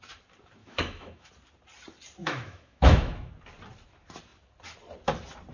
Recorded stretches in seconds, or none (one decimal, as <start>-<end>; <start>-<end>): 0.0-0.6; 1.3-2.2; 3.3-5.5